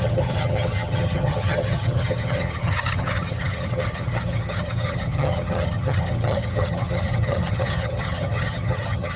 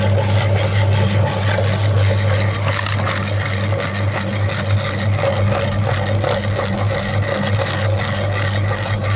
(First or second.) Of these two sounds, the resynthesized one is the first